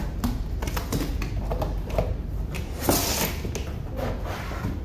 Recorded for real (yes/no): yes